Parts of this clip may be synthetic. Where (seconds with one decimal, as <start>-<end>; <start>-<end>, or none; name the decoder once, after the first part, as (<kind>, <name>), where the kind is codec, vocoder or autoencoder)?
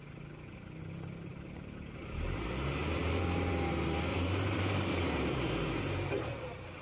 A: 1.3-3.5 (vocoder, BigVGAN v2); 4.1-5.5